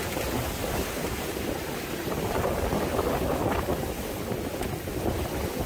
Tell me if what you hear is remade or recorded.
recorded